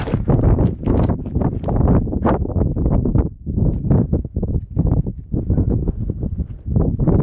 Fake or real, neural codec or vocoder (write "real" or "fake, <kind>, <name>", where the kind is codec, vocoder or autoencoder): real